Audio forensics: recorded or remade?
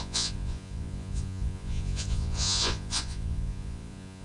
remade